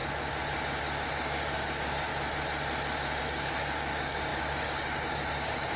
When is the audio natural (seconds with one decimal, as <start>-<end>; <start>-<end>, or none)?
0.0-1.1; 2.1-3.2